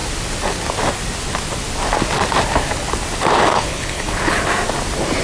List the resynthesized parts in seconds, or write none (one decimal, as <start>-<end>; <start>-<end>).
3.5-4.5